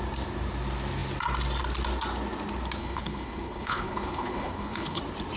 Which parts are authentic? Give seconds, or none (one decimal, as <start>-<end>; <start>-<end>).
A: 0.0-2.8; 5.0-5.4